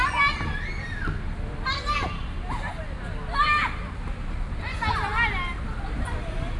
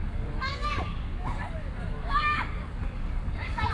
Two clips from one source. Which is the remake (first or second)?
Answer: second